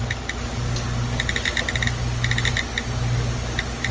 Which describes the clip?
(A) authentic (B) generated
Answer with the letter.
A